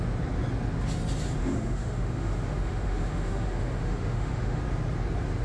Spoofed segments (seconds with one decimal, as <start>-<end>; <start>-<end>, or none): 1.4-4.6